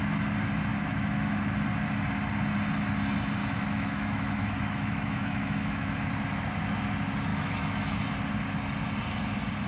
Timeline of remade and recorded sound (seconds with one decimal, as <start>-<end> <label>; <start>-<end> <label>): 0.0-0.7 recorded; 0.7-1.5 remade; 1.5-3.4 recorded; 3.4-6.1 remade; 6.1-7.3 recorded; 7.3-8.0 remade; 8.0-9.7 recorded